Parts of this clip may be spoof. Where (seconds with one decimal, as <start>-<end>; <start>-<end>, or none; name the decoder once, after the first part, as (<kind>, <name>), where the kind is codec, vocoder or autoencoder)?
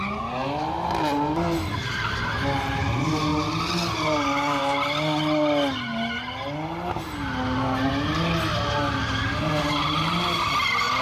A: none